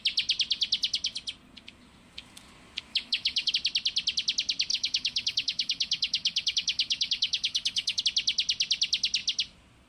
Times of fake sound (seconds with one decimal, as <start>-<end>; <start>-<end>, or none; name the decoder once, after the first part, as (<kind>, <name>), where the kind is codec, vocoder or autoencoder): 2.9-3.5 (autoencoder, DAC-VAE); 4.7-8.0